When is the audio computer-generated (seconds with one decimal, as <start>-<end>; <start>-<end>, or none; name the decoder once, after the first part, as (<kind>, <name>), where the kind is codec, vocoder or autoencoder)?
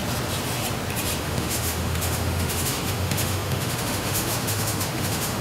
1.2-5.4 (autoencoder, DAC-VAE)